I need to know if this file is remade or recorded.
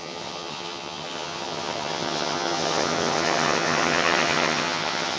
remade